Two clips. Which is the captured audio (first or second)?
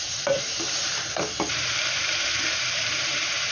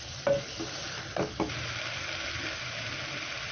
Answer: second